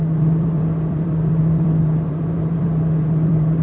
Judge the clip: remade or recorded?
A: remade